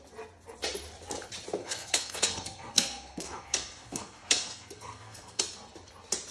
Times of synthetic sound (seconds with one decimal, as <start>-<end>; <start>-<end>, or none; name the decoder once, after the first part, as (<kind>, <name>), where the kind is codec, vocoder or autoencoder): 1.6-5.4 (codec, SNAC)